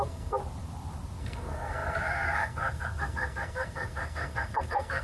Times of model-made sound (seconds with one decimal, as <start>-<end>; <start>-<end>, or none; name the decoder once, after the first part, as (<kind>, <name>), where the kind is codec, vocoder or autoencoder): 0.0-0.4 (codec, SNAC); 1.2-5.0